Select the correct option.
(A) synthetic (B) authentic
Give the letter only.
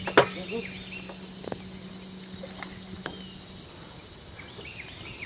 B